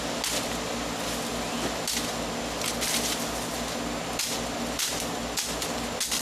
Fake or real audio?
real